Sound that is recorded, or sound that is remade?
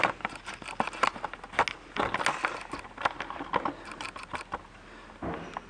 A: recorded